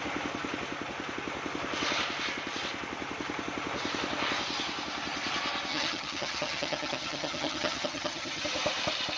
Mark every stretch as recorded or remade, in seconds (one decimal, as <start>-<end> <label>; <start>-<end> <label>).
0.0-5.7 recorded; 5.7-8.4 remade; 8.4-9.2 recorded